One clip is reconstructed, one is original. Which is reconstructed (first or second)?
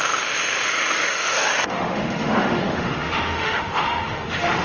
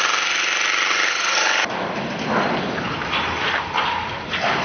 first